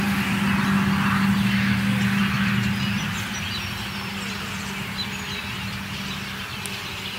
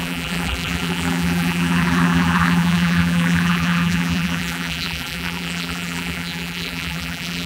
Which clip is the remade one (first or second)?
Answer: second